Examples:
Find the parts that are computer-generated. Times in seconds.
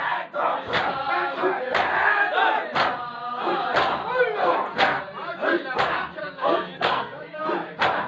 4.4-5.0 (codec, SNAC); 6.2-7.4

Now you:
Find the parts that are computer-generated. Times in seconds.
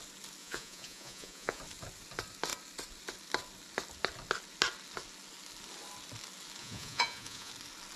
0.4-1.6 (vocoder, Vocos); 6.6-7.5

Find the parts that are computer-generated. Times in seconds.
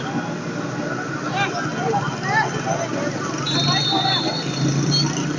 none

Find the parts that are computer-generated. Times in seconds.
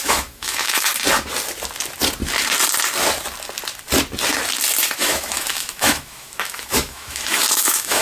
0.0-0.9 (autoencoder, DAC-VAE); 5.0-8.0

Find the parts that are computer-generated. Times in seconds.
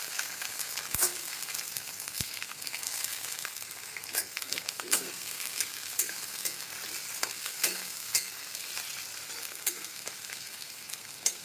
0.0-6.7 (codec, SNAC); 7.2-8.7; 9.4-11.4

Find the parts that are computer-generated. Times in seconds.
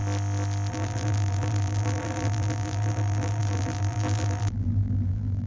0.7-5.5 (vocoder, BigVGAN v2)